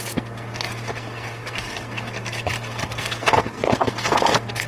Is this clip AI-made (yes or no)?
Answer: yes